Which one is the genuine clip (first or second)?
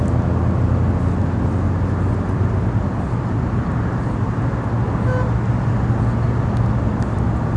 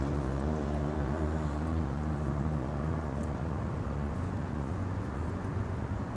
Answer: first